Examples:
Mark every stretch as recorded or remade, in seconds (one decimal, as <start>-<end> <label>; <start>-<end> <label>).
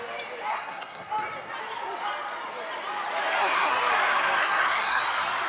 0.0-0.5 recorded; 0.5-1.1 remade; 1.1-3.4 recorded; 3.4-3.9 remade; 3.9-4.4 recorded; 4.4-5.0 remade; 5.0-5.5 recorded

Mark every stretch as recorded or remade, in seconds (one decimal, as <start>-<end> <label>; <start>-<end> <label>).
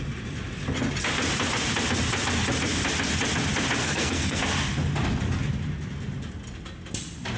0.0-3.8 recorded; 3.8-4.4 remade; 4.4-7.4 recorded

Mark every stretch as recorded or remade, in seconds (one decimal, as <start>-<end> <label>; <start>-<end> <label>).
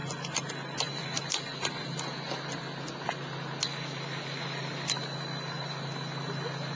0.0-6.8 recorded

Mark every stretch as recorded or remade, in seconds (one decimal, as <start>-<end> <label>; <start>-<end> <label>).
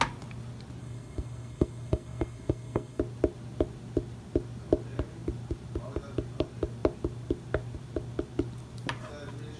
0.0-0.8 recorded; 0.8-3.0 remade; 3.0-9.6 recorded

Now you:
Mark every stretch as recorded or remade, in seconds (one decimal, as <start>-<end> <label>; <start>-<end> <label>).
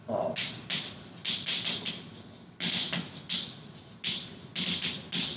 0.0-5.4 recorded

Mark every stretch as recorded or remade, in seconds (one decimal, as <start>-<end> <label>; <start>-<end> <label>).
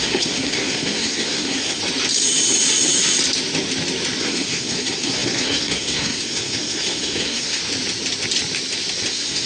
0.0-1.8 remade; 1.8-4.2 recorded; 4.2-7.6 remade; 7.6-9.1 recorded; 9.1-9.5 remade